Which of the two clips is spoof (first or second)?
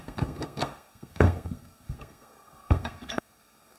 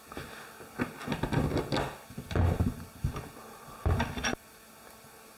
first